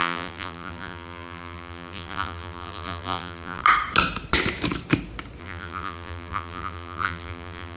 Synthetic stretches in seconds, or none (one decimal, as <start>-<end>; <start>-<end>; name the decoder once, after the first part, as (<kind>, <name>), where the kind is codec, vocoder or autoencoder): 0.0-3.6 (vocoder, BigVGAN v2); 5.4-7.8